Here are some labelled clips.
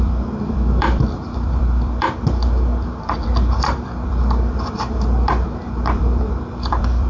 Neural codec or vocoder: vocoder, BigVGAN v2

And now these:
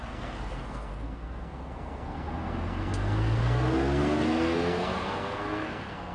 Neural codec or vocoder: codec, SNAC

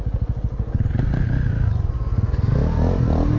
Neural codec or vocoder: none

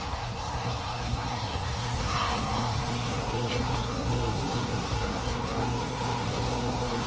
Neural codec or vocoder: codec, SNAC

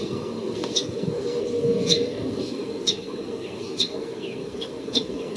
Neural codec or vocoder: codec, SNAC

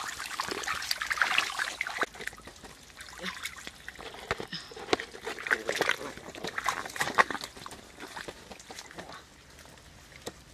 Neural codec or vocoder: none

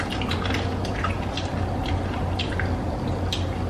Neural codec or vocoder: none